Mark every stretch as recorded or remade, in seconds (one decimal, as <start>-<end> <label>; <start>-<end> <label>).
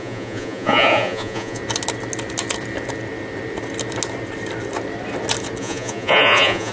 0.0-1.6 remade; 1.6-5.6 recorded; 5.6-6.7 remade